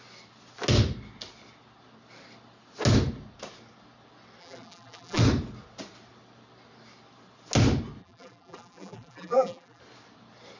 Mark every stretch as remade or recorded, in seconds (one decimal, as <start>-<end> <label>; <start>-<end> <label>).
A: 0.0-4.4 recorded; 4.4-5.2 remade; 5.2-8.0 recorded; 8.0-9.8 remade; 9.8-10.6 recorded